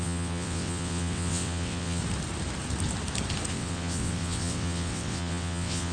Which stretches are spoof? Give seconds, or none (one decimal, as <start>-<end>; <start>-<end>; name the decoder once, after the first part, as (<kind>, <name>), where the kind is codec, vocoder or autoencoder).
0.0-2.0 (vocoder, WaveNeXt); 3.5-5.9